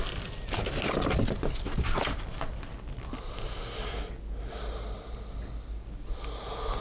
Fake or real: real